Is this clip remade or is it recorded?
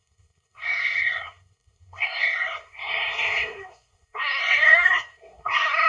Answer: remade